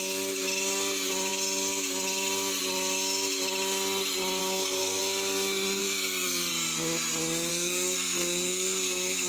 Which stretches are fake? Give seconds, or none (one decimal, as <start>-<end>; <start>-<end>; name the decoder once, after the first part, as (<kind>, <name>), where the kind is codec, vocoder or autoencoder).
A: 4.4-5.0 (codec, SNAC); 5.8-6.5; 7.5-9.3